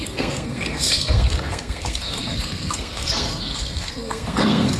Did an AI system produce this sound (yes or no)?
yes